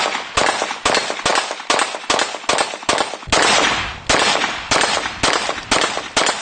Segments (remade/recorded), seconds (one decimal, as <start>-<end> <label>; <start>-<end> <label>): 0.0-6.4 recorded

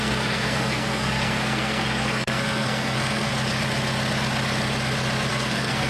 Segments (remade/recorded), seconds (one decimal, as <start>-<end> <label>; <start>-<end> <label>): 0.0-3.3 remade; 3.3-5.3 recorded; 5.3-5.9 remade

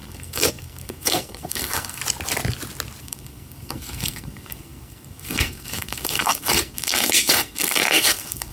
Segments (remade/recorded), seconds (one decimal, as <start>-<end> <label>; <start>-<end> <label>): 0.0-2.0 remade; 2.0-3.0 recorded; 3.0-8.5 remade

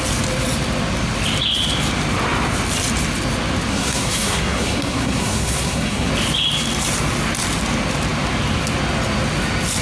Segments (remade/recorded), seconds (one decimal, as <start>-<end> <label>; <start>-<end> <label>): 0.0-3.7 recorded; 3.7-6.1 remade; 6.1-9.8 recorded

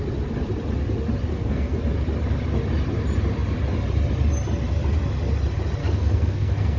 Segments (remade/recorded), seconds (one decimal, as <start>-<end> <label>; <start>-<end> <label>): 0.0-1.3 recorded; 1.3-1.8 remade; 1.8-5.8 recorded; 5.8-6.8 remade

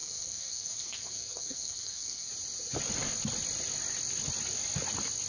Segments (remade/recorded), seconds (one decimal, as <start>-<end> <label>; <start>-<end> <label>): 0.0-2.3 remade; 2.3-5.3 recorded

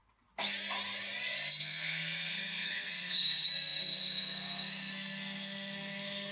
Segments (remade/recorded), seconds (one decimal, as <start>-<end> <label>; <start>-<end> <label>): 0.0-1.6 recorded; 1.6-6.3 remade